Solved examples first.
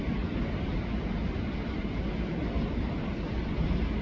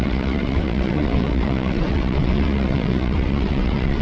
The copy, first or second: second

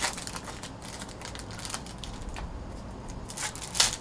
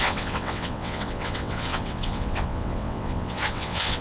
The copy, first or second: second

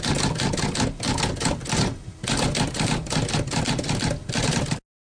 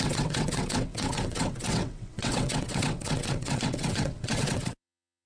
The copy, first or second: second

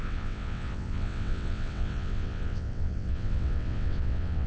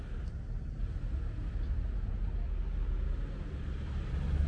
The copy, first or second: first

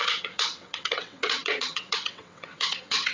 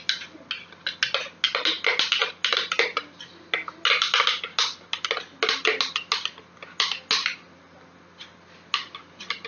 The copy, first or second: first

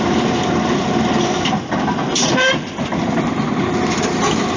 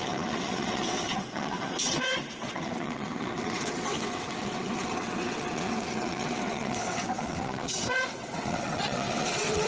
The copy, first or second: second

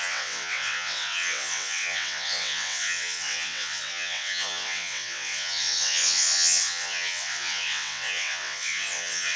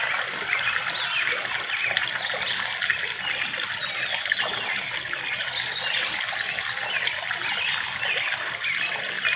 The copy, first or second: first